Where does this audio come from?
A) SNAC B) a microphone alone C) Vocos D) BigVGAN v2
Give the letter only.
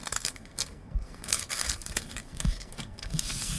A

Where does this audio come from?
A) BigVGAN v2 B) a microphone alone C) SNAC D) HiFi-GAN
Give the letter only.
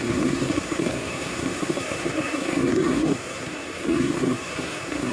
C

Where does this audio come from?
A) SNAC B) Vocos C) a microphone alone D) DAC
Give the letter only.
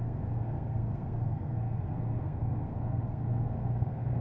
A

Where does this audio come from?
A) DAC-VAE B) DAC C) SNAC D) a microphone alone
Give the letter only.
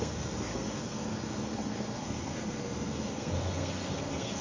C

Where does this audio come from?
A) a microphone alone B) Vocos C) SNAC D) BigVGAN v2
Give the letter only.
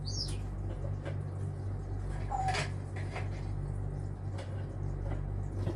A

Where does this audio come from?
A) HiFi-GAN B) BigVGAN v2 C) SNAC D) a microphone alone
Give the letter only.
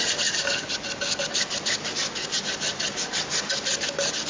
D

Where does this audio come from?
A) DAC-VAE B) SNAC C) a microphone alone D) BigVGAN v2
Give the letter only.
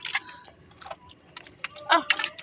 C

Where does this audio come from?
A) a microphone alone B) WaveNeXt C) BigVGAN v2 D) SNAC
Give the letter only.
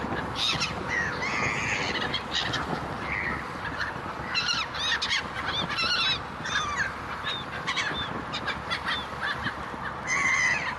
A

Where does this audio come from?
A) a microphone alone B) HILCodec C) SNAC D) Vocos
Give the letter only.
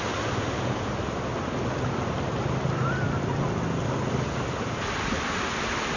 A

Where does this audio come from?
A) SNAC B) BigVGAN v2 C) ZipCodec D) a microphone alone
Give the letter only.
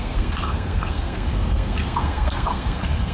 A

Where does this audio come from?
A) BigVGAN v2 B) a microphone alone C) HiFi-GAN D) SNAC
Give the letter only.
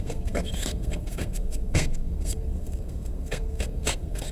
D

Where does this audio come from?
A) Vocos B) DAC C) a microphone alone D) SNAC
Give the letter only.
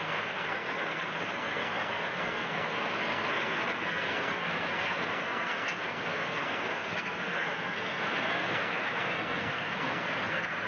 D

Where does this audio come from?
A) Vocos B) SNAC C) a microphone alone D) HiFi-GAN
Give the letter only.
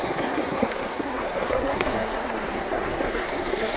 B